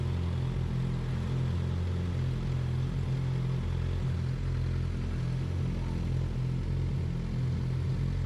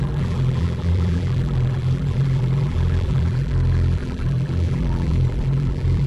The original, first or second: first